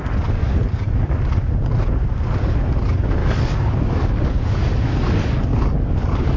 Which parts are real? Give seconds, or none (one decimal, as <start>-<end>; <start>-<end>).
0.0-0.4; 1.4-3.2; 4.6-5.5